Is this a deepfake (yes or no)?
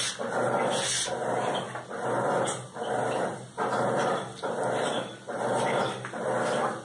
no